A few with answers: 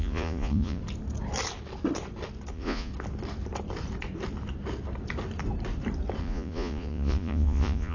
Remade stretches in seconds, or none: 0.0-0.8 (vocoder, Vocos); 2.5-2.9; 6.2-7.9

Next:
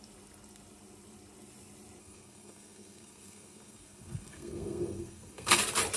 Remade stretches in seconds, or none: 2.0-5.6 (codec, SNAC)

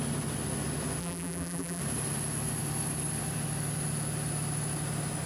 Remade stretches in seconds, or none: 1.0-1.8 (vocoder, BigVGAN v2)